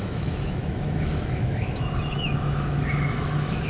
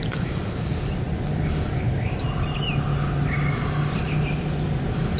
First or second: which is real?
second